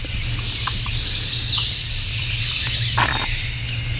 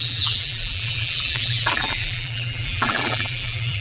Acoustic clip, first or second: first